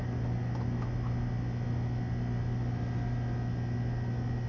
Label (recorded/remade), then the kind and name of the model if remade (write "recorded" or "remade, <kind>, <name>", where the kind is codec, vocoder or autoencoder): recorded